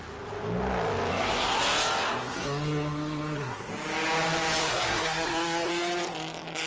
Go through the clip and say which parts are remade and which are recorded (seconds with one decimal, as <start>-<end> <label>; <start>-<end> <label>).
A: 0.0-1.1 recorded; 1.1-1.6 remade; 1.6-2.2 recorded; 2.2-3.7 remade; 3.7-4.6 recorded; 4.6-5.7 remade; 5.7-6.7 recorded